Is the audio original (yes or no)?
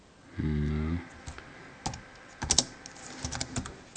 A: yes